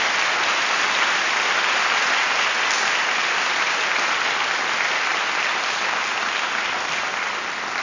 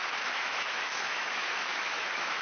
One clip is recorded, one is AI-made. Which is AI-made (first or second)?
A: second